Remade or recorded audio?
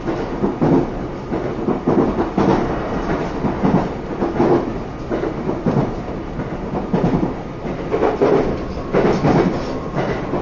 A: recorded